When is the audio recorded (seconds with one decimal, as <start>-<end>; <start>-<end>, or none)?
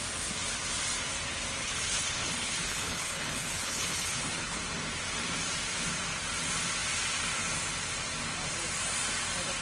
0.0-1.6; 4.6-9.6